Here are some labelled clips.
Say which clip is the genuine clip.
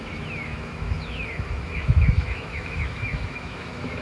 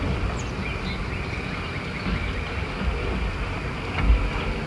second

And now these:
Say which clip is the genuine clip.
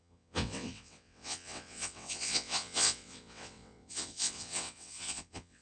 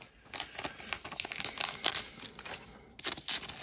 second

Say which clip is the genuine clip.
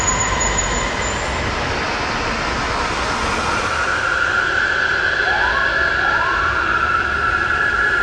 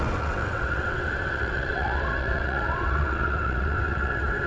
first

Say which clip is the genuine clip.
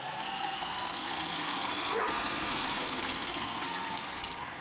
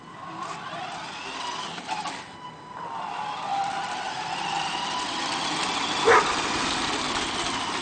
second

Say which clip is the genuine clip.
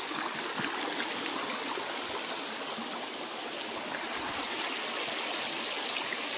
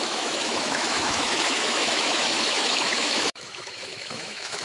first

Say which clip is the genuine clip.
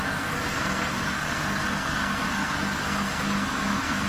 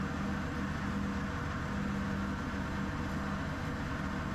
second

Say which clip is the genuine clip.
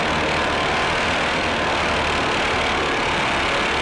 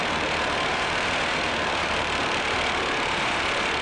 first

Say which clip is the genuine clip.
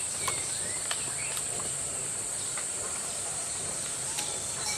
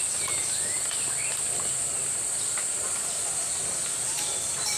second